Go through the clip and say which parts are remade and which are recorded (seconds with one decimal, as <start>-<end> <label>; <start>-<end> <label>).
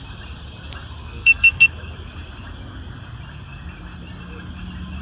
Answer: 0.0-1.0 recorded; 1.0-1.7 remade; 1.7-5.0 recorded